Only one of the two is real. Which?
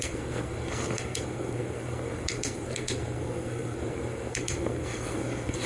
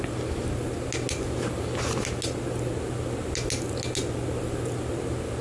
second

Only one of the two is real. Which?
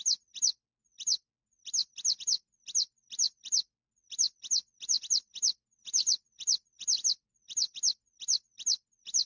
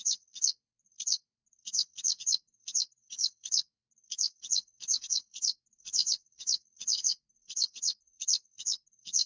first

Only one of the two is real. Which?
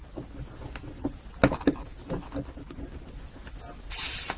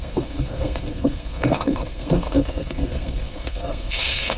first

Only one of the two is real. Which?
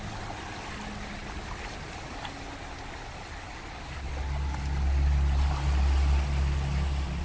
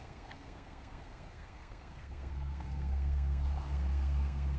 first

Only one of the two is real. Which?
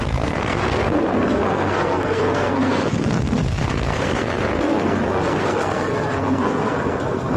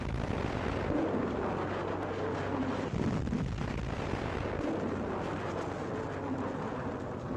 second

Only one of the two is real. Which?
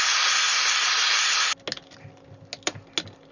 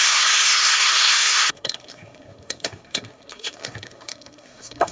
first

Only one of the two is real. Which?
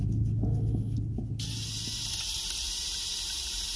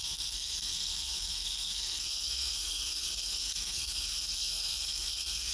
first